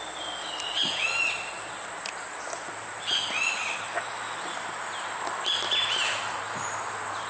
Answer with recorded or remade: recorded